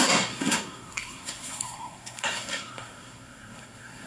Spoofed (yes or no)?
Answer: yes